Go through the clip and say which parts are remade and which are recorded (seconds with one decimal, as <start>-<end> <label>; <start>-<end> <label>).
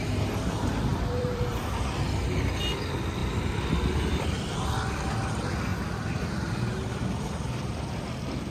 0.0-0.9 recorded; 0.9-1.8 remade; 1.8-3.2 recorded; 3.2-4.5 remade; 4.5-5.7 recorded; 5.7-6.2 remade; 6.2-8.5 recorded